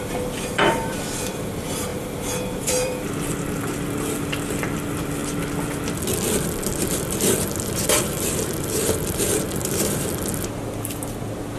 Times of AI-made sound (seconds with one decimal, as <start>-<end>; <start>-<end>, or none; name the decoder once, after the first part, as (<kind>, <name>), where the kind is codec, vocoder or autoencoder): 0.0-1.9 (vocoder, BigVGAN v2); 2.6-5.2; 6.5-11.6